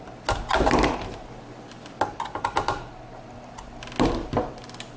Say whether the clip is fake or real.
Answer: real